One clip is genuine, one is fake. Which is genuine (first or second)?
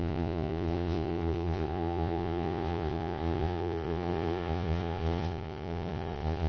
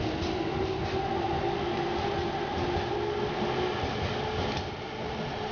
second